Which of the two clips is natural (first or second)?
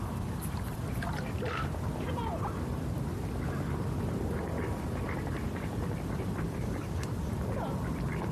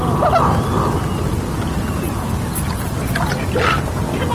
second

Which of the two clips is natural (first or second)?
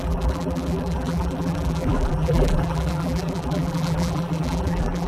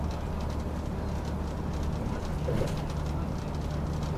second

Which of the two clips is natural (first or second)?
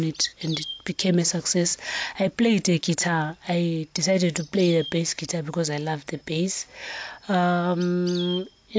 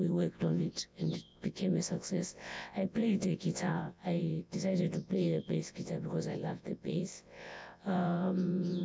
first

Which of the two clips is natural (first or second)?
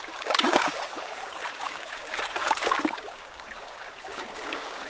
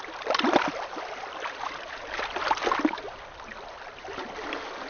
second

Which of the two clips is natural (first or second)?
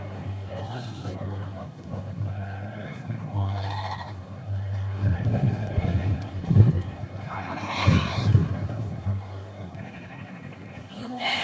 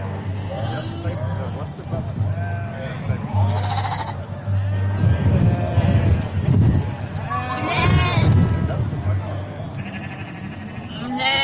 second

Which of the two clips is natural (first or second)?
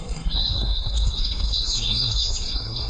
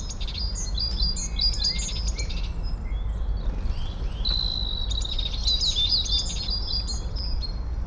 second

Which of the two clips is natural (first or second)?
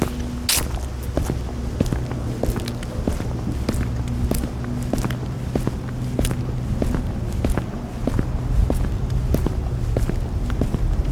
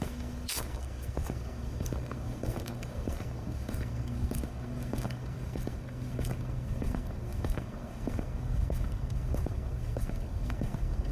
first